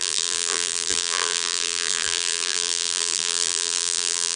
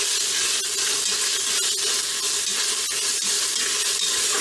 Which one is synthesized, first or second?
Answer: first